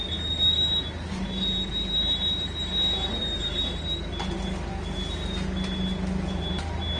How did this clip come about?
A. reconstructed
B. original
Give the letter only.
B